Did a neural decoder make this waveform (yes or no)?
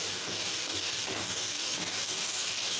yes